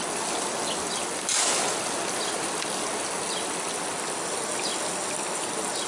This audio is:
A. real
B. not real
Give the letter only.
A